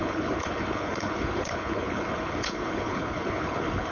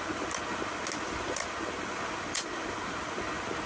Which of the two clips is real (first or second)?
second